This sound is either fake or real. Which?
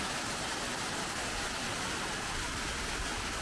real